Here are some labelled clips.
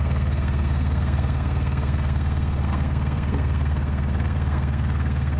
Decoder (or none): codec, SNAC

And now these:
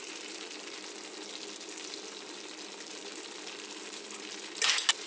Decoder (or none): none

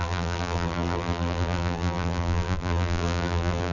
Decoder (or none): vocoder, BigVGAN v2